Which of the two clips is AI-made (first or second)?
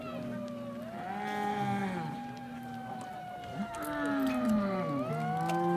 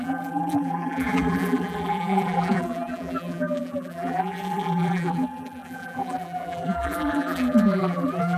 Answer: second